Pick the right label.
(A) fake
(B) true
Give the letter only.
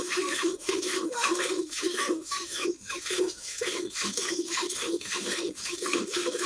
A